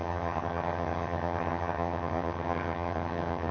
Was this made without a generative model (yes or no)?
no